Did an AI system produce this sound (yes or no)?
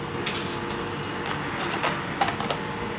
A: no